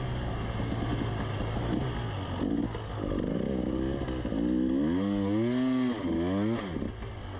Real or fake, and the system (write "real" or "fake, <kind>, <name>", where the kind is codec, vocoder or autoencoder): real